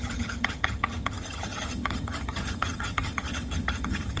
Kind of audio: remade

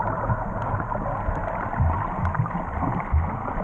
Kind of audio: recorded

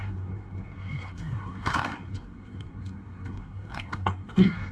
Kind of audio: remade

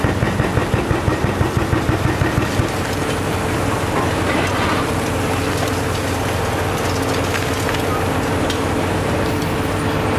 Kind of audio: recorded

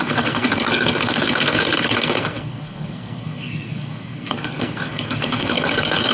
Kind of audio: remade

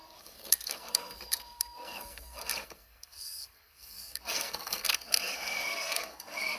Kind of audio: remade